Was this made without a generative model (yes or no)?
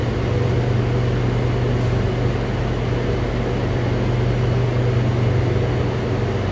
yes